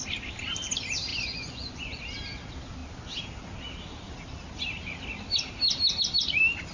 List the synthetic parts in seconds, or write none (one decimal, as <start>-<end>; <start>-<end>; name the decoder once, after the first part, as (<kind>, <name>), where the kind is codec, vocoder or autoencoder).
1.1-2.0 (vocoder, Vocos)

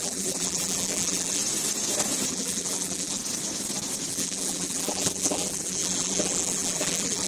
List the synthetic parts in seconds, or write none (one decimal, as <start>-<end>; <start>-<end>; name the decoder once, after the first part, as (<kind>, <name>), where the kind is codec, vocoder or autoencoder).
0.0-1.4 (vocoder, BigVGAN v2); 2.3-3.2; 4.1-7.3

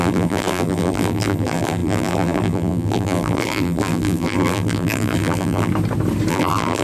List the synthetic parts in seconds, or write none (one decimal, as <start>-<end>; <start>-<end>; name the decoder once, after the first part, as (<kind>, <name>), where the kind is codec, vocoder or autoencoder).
0.0-5.7 (vocoder, BigVGAN v2); 6.3-6.8

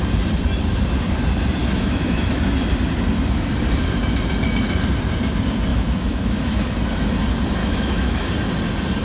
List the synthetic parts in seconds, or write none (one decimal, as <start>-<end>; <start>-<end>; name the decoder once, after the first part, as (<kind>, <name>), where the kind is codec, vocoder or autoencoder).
1.6-2.4 (autoencoder, DAC-VAE); 5.7-6.7; 7.6-8.3

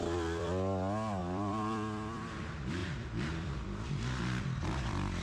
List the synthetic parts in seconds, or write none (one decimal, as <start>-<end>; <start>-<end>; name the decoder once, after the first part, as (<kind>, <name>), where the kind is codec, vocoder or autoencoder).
0.0-5.2 (vocoder, BigVGAN v2)

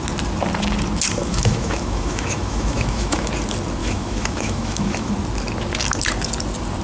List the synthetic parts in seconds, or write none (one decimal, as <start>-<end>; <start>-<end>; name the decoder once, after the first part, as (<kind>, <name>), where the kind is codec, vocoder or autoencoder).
1.2-3.3 (autoencoder, DAC-VAE); 3.8-5.1

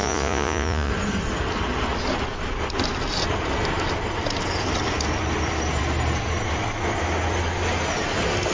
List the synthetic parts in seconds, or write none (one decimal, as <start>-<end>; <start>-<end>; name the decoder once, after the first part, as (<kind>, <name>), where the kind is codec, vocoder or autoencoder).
0.0-0.9 (vocoder, Vocos)

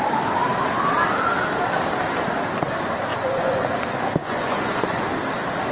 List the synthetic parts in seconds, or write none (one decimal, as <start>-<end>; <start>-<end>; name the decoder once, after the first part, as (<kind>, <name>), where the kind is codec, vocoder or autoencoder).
3.1-3.6 (vocoder, Vocos); 4.2-5.0